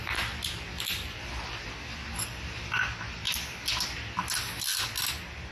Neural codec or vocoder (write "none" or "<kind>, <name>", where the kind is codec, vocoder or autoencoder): none